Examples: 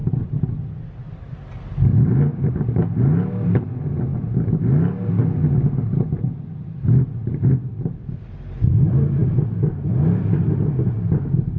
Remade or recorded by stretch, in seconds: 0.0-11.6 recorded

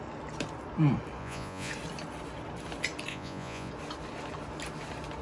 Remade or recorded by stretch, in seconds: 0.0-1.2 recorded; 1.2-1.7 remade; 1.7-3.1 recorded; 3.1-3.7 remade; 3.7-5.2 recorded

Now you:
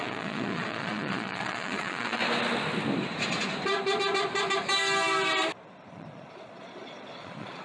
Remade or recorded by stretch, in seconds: 0.0-2.2 remade; 2.2-5.9 recorded; 5.9-7.6 remade